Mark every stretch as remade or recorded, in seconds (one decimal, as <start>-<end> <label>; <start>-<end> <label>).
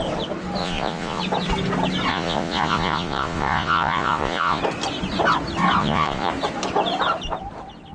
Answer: 0.0-0.6 recorded; 0.6-1.2 remade; 1.2-2.1 recorded; 2.1-4.6 remade; 4.6-5.8 recorded; 5.8-6.3 remade; 6.3-7.9 recorded